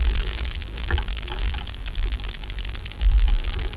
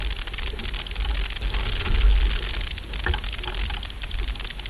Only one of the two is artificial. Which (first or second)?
first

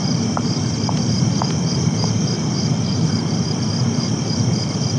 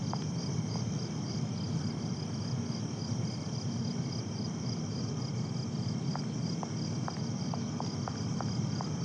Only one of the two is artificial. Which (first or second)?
first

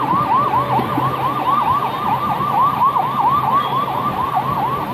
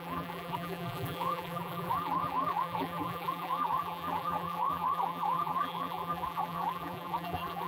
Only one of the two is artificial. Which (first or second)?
second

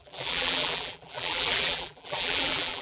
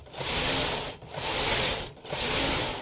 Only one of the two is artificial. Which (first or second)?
first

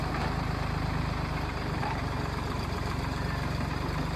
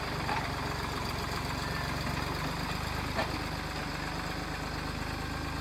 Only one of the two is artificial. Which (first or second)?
first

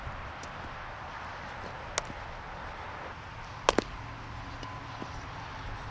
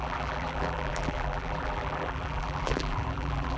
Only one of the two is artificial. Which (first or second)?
second